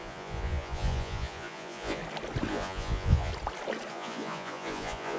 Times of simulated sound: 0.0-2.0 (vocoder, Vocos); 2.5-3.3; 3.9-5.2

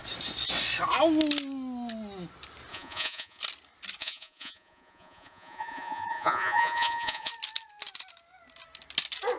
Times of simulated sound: 2.7-3.4 (vocoder, Vocos); 4.0-7.3

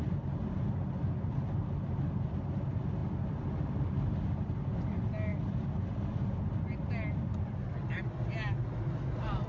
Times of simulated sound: none